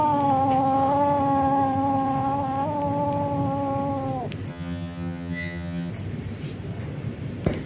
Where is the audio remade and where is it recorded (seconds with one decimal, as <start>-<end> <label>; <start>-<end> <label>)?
0.0-4.5 recorded; 4.5-5.9 remade; 5.9-7.7 recorded